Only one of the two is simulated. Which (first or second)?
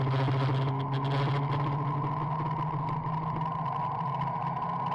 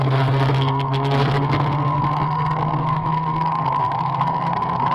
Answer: second